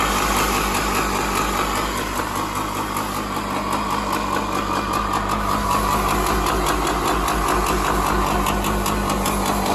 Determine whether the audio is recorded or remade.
recorded